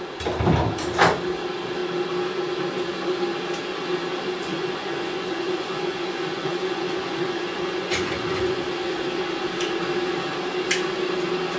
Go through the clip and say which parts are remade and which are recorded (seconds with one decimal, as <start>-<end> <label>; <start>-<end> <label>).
0.0-4.5 recorded; 4.5-8.6 remade; 8.6-11.6 recorded